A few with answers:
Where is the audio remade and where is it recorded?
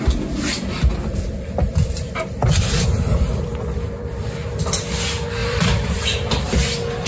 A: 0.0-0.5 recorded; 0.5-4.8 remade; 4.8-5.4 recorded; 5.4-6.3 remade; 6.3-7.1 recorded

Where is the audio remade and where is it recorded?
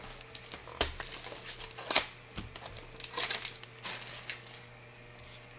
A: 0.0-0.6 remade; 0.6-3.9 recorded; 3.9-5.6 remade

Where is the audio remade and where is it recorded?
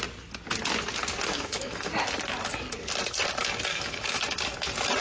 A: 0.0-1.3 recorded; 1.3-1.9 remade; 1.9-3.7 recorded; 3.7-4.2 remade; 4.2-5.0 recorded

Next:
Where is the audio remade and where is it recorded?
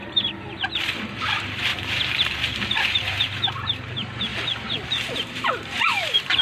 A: 0.0-0.8 recorded; 0.8-1.7 remade; 1.7-2.2 recorded; 2.2-4.3 remade; 4.3-4.9 recorded; 4.9-6.4 remade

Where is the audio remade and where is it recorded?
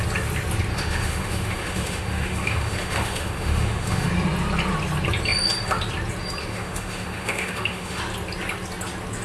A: 0.0-0.7 recorded; 0.7-4.1 remade; 4.1-6.4 recorded; 6.4-8.0 remade; 8.0-9.2 recorded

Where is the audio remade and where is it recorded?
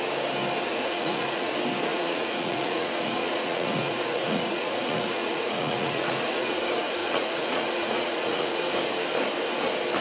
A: 0.0-0.7 recorded; 0.7-1.5 remade; 1.5-1.9 recorded; 1.9-6.6 remade; 6.6-7.0 recorded; 7.0-8.6 remade; 8.6-10.0 recorded